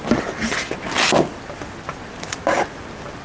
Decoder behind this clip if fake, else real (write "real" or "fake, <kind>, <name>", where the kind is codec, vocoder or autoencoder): real